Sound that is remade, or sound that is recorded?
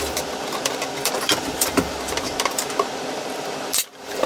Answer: remade